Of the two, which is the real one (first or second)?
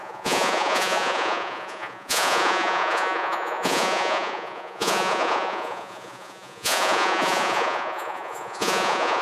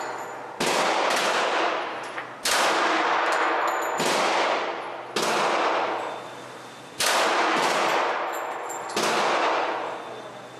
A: second